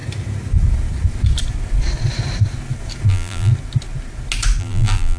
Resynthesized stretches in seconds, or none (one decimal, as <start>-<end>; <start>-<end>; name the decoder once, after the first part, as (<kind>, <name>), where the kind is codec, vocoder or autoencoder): 3.1-3.5 (vocoder, BigVGAN v2); 4.6-5.2